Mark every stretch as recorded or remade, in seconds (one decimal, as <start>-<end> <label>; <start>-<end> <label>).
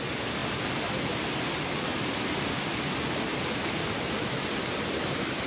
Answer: 0.0-5.5 recorded